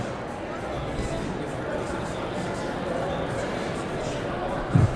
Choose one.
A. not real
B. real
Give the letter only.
B